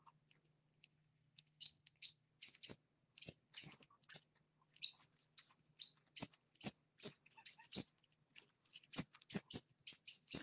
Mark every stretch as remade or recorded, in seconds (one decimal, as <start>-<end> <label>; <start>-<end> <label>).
0.0-0.9 recorded; 0.9-2.3 remade; 2.3-10.4 recorded